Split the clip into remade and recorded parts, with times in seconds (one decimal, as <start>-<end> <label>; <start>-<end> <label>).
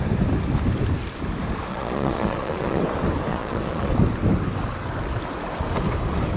0.0-1.7 recorded; 1.7-2.8 remade; 2.8-3.3 recorded; 3.3-3.9 remade; 3.9-6.4 recorded